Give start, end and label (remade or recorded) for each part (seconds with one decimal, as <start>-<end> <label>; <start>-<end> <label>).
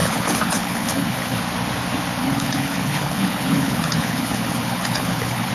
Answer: 0.0-1.4 remade; 1.4-2.2 recorded; 2.2-5.5 remade